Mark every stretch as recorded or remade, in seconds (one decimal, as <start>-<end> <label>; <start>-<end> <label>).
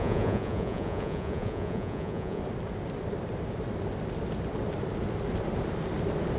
0.0-2.4 remade; 2.4-6.4 recorded